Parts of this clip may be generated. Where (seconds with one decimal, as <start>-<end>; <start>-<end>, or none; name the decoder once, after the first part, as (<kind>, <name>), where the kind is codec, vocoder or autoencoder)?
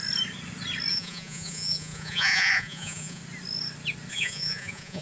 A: 0.9-3.2 (vocoder, Vocos); 4.1-5.0